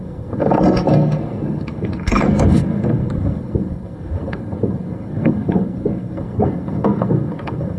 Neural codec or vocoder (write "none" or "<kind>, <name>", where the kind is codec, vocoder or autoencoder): codec, SNAC